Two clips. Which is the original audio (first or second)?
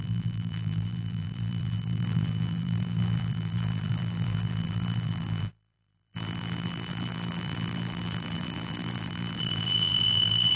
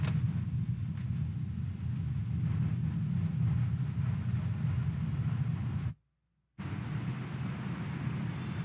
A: second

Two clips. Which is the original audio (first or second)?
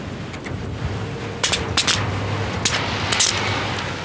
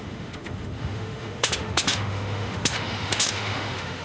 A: first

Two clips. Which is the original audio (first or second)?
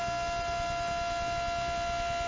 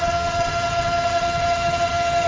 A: first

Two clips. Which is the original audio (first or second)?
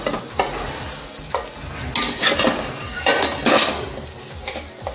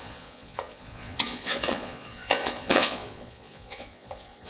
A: first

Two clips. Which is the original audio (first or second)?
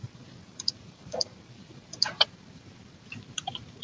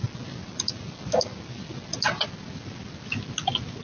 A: second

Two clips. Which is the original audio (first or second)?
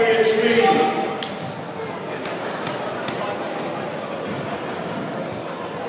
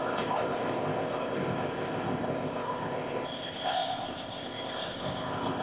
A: first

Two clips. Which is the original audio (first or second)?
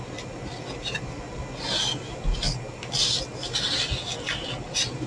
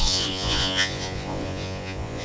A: first